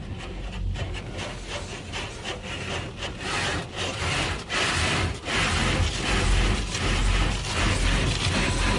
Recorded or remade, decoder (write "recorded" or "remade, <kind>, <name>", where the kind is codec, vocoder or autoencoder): recorded